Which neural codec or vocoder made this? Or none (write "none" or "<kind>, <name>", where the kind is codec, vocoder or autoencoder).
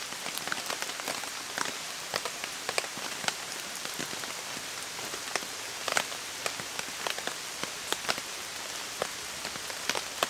vocoder, BigVGAN v2